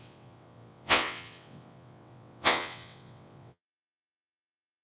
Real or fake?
fake